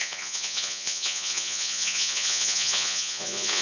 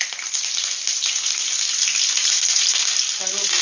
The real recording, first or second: second